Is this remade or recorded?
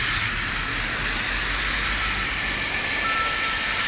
recorded